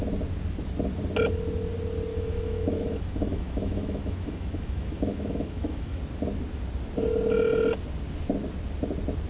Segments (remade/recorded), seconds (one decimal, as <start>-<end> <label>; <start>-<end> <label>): 0.0-2.1 recorded; 2.1-6.0 remade; 6.0-9.3 recorded